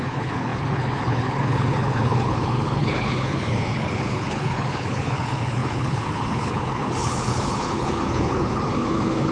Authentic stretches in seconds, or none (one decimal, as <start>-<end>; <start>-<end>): none

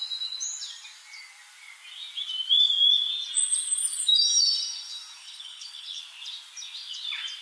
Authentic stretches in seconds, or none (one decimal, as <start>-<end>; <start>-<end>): 0.0-5.2; 6.0-7.4

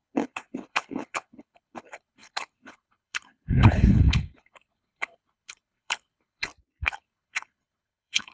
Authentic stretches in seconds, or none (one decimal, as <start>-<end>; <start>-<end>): 6.5-7.0

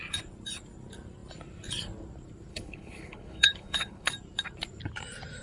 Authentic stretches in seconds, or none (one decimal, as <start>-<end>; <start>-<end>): 0.0-2.5; 4.1-5.4

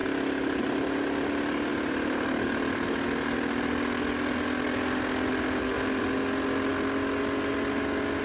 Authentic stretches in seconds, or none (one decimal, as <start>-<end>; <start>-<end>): 0.0-8.2

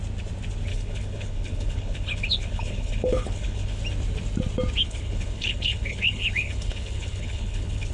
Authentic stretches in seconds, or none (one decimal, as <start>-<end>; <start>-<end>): 0.0-0.7; 3.8-4.8